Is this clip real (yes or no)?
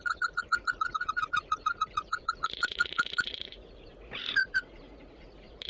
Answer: no